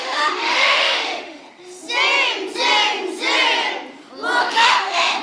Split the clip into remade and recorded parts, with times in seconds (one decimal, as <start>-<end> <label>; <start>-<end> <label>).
0.0-1.4 remade; 1.4-4.4 recorded; 4.4-5.2 remade